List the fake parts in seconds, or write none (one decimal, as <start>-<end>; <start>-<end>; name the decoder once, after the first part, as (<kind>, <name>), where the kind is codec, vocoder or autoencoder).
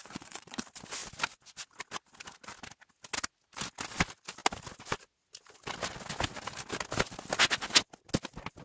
0.0-0.6 (vocoder, Vocos)